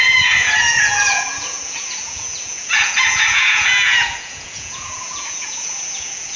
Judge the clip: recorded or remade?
remade